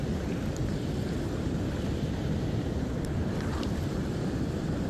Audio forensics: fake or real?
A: real